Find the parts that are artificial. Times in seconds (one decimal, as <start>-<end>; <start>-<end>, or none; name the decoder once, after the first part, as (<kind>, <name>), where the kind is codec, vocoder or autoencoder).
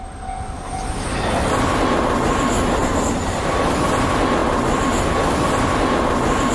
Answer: none